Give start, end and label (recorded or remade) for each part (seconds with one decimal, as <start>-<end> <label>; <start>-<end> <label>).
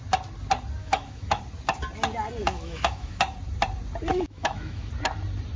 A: 0.0-0.8 recorded; 0.8-1.4 remade; 1.4-2.4 recorded; 2.4-3.2 remade; 3.2-4.1 recorded; 4.1-4.9 remade; 4.9-5.6 recorded